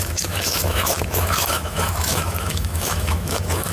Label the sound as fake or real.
fake